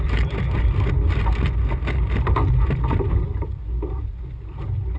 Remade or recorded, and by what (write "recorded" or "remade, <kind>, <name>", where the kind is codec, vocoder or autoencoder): recorded